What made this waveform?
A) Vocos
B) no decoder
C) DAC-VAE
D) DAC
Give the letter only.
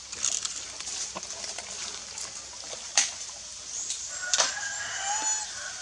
B